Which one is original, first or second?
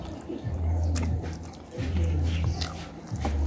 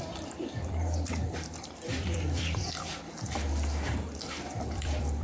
first